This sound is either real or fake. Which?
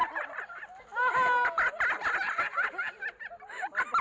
real